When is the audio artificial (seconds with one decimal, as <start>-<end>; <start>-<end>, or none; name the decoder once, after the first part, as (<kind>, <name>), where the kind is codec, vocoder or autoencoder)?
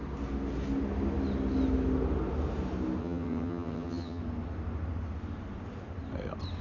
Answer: 3.0-4.2 (vocoder, HiFi-GAN)